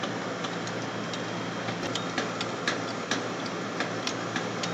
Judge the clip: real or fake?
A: real